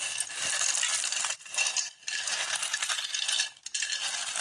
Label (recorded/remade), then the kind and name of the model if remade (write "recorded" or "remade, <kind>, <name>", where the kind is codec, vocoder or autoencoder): recorded